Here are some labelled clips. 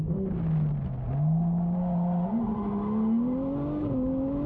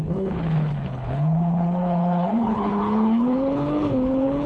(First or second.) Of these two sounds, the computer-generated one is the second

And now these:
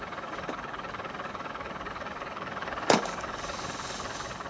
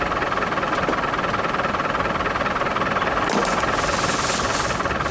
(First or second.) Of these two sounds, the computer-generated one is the first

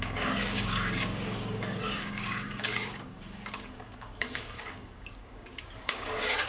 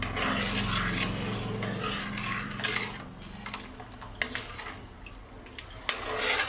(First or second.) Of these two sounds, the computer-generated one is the first